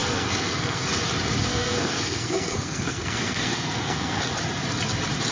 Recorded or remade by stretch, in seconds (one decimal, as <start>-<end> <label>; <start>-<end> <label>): 0.0-0.9 remade; 0.9-1.5 recorded; 1.5-4.2 remade; 4.2-5.3 recorded